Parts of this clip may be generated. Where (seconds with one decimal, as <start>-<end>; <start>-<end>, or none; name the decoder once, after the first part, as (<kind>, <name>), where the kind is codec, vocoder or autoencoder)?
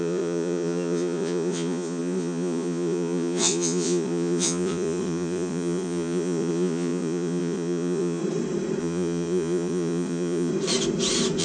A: 0.0-8.2 (vocoder, Vocos); 8.8-10.5